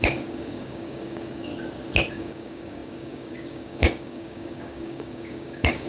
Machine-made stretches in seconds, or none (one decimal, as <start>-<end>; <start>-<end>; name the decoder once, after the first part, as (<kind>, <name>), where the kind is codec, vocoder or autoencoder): 0.0-1.5 (codec, DAC); 2.1-5.9